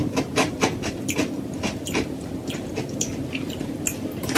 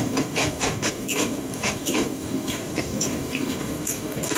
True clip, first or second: first